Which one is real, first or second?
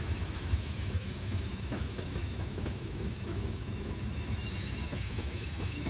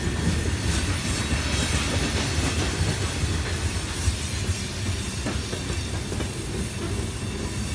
second